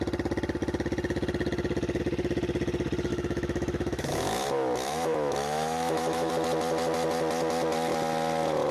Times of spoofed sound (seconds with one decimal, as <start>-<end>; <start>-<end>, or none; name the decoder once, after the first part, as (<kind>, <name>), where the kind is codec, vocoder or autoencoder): 3.1-6.3 (autoencoder, DAC-VAE)

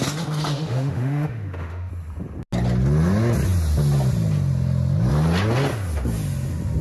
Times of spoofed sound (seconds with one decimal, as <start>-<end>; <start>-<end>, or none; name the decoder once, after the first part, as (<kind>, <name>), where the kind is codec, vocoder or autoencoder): 0.5-1.9 (autoencoder, DAC-VAE)

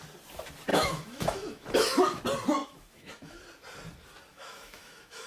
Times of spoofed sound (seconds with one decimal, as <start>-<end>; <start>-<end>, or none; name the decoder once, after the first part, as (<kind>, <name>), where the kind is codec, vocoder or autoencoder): 0.7-2.2 (autoencoder, DAC-VAE); 2.6-3.4; 4.3-5.3

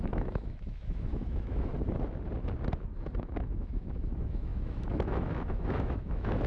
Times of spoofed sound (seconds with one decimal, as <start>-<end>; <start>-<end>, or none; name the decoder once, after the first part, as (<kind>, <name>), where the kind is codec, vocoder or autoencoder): 0.0-1.7 (autoencoder, DAC-VAE); 3.2-6.5

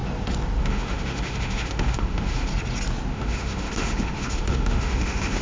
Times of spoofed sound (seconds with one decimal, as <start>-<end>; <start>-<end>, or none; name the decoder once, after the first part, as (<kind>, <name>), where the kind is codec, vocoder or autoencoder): 0.6-2.5 (autoencoder, DAC-VAE); 3.1-5.4

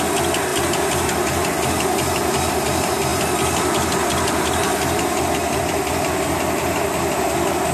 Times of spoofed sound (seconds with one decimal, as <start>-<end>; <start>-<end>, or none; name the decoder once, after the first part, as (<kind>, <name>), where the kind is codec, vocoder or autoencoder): none